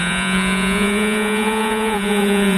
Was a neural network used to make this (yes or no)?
yes